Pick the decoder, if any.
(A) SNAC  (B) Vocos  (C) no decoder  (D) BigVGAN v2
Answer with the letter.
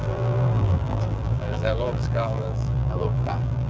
D